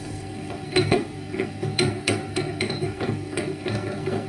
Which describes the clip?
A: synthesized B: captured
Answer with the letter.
A